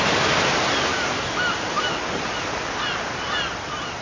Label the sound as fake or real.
real